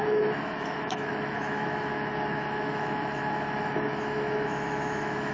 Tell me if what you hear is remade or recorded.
remade